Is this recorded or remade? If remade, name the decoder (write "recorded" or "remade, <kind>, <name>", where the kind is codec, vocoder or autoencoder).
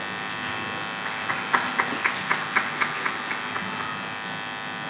recorded